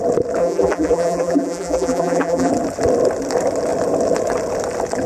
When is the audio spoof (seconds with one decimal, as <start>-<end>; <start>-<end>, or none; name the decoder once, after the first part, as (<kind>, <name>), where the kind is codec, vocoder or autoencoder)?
0.4-2.5 (vocoder, BigVGAN v2)

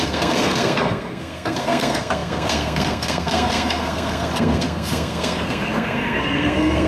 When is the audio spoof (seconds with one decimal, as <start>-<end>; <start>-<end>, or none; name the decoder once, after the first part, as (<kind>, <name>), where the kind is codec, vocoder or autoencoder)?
0.0-6.9 (codec, SNAC)

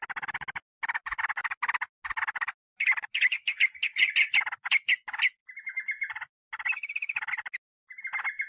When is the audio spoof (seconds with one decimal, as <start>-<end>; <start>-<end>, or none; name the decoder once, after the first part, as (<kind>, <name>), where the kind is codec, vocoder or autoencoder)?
none

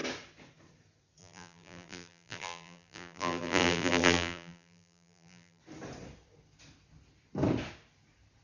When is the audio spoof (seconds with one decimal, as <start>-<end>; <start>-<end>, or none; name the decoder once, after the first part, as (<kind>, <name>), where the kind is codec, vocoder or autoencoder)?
1.2-5.6 (vocoder, BigVGAN v2)